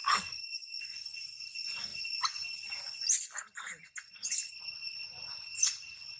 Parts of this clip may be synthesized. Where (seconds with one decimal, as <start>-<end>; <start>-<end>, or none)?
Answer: 0.0-0.8